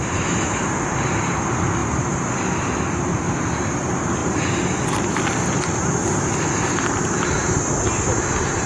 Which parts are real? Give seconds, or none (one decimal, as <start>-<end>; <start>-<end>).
0.0-1.8; 3.1-4.2; 5.2-8.7